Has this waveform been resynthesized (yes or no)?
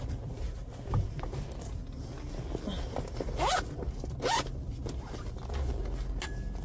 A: no